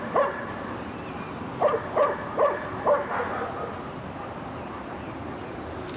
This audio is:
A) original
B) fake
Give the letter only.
A